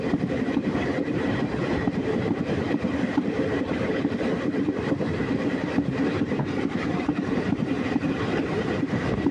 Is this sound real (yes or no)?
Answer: no